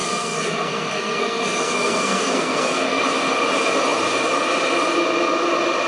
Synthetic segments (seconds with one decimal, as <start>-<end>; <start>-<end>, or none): 0.0-3.0